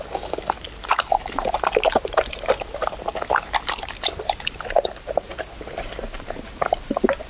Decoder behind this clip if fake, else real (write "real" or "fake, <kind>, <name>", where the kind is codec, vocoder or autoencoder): real